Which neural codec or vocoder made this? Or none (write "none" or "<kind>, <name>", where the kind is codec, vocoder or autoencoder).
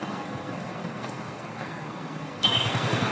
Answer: codec, SNAC